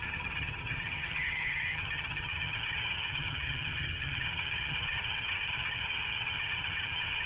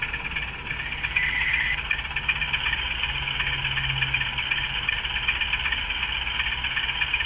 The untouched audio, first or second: second